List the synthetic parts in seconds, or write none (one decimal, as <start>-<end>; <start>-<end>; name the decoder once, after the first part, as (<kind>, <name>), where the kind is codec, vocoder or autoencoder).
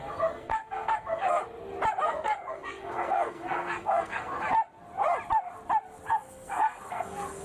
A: 0.0-1.4 (codec, SNAC); 2.0-4.3; 6.1-7.4